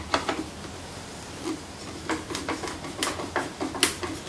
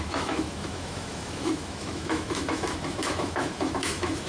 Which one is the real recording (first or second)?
first